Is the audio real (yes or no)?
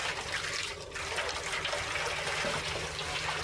yes